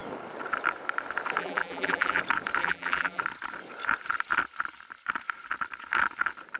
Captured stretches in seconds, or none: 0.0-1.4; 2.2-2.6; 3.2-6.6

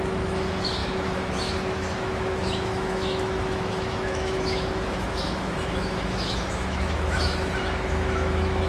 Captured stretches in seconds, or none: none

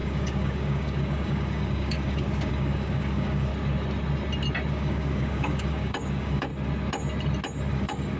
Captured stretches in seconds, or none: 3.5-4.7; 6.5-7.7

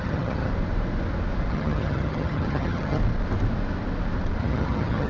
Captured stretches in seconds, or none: 0.5-1.5; 3.0-4.4

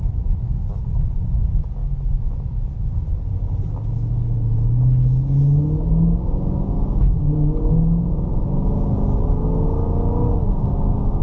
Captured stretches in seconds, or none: 0.0-11.2

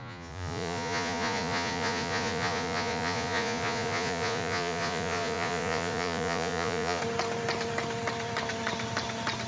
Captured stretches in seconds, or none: 7.0-9.5